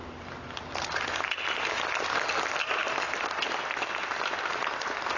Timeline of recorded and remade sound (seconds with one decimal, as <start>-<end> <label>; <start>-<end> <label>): 0.0-5.2 recorded